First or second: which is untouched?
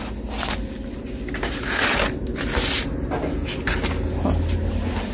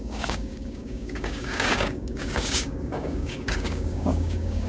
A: first